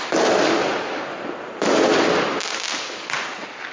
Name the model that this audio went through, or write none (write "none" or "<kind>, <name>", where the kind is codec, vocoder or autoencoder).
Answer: none